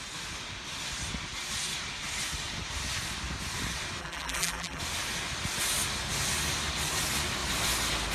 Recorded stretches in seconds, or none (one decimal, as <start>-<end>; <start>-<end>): 0.0-4.0; 4.8-8.1